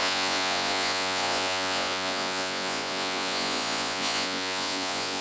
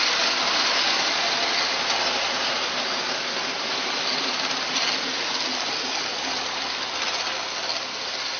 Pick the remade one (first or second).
first